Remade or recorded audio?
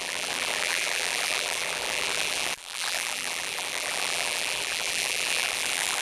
remade